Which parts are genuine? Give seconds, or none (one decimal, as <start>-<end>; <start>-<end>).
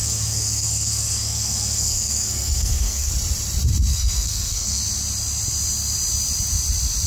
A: 3.1-3.9; 4.8-7.1